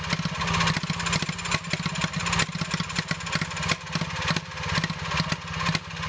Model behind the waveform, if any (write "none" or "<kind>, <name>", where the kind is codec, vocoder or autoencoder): none